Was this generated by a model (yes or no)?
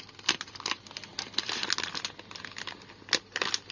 no